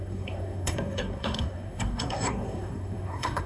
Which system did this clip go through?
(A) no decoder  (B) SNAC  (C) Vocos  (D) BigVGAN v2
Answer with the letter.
B